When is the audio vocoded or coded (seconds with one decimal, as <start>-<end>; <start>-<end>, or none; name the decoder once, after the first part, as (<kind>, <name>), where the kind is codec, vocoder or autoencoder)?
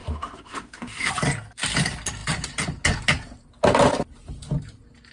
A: 0.0-1.1 (autoencoder, DAC-VAE)